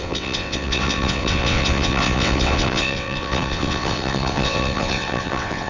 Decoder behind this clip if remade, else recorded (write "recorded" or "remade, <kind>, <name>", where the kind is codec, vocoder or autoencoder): remade, vocoder, WaveNeXt